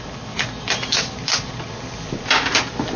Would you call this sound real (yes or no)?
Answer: yes